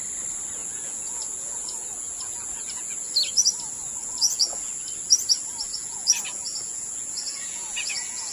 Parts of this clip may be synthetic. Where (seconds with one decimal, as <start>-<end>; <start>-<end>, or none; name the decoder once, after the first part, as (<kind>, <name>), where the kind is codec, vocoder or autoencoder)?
0.6-3.1 (vocoder, Vocos); 4.0-4.7; 5.7-8.3